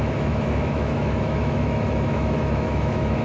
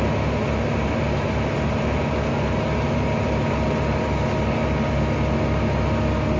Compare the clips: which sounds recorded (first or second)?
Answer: second